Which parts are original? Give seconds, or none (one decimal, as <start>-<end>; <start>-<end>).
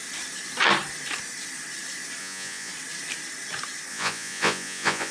0.0-2.2; 2.7-3.9